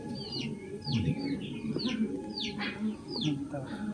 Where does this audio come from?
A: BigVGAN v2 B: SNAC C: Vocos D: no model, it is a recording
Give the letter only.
D